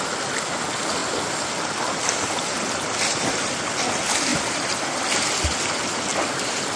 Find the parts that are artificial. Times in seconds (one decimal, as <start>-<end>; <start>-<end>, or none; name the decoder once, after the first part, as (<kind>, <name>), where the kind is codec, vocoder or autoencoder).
none